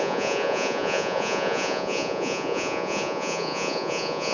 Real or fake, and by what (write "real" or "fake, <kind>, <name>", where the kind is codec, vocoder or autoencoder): fake, vocoder, Vocos